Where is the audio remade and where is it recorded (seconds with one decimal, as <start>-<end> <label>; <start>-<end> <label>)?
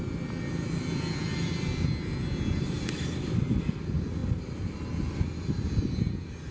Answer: 0.0-6.5 recorded